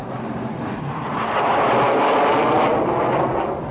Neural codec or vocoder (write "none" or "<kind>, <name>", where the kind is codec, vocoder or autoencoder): none